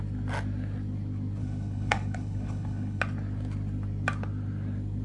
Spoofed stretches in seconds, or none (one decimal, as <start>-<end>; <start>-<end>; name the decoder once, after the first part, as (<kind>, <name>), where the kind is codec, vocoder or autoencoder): 1.4-3.0 (codec, HILCodec)